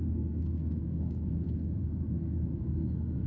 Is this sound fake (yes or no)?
yes